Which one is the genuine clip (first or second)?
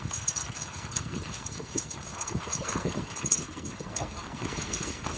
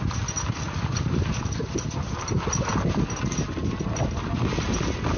second